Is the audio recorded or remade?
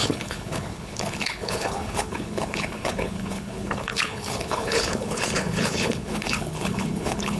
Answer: remade